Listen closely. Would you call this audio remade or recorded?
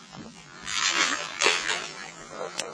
remade